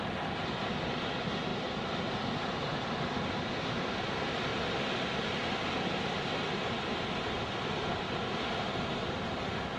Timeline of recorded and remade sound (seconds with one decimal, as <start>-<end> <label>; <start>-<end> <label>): 0.0-9.8 recorded